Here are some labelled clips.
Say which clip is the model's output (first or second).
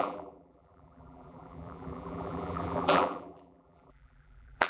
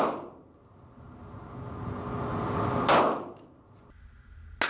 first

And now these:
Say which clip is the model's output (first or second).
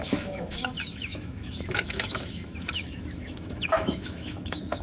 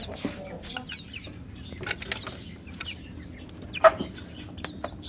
first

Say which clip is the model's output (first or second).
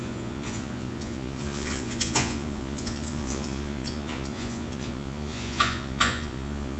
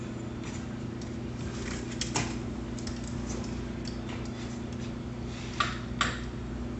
first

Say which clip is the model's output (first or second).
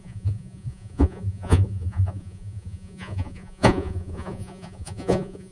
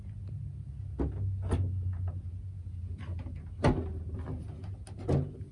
first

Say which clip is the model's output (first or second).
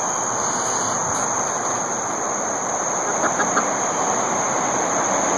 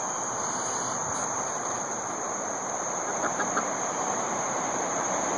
second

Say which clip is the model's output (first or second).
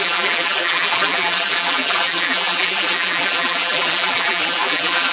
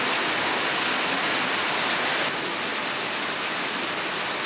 first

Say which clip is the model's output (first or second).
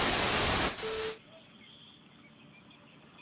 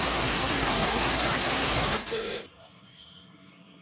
second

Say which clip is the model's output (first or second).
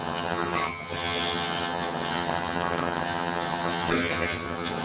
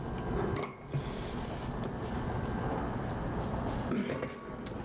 first